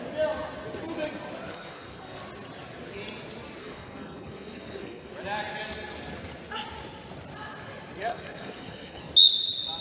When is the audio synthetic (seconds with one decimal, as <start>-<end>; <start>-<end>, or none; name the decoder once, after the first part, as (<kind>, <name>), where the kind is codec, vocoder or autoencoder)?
1.5-2.2 (codec, SNAC); 3.6-5.1; 8.1-9.1